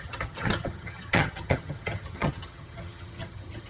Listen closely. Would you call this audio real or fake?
fake